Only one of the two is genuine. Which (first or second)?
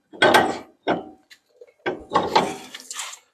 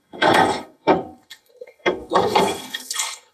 first